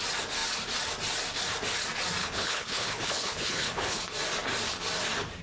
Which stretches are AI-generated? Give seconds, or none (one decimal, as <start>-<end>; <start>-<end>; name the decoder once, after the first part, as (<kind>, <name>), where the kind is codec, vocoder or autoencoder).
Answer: 2.2-4.0 (codec, HILCodec)